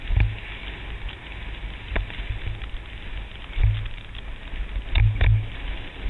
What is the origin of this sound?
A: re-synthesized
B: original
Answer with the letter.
B